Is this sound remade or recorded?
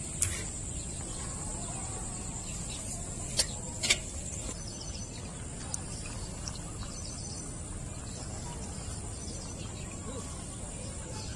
recorded